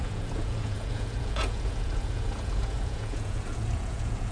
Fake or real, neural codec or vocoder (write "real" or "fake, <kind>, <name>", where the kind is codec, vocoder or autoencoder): fake, vocoder, Vocos